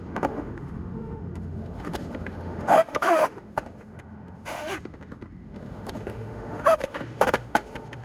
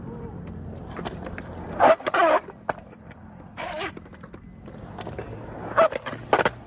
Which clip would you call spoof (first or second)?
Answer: first